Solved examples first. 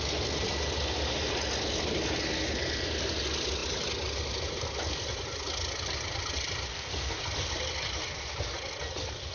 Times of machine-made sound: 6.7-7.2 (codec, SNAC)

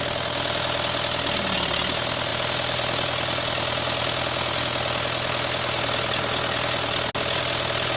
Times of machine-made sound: none

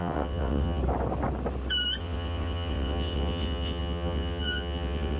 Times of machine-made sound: 0.0-0.8 (vocoder, WaveNeXt); 2.0-5.2